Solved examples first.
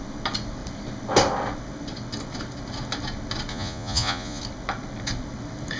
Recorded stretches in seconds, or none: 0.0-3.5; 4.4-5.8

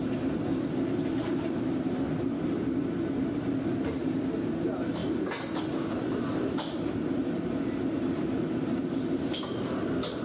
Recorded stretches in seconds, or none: 0.0-10.2